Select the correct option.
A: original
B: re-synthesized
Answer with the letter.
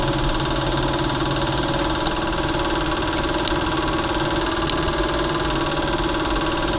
A